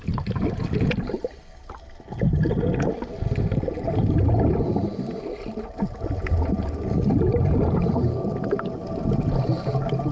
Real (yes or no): yes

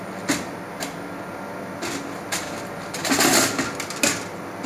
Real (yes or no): yes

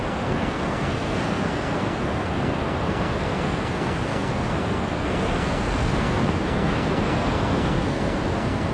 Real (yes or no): no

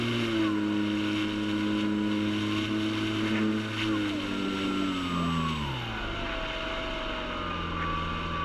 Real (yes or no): yes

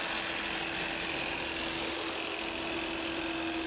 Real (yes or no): yes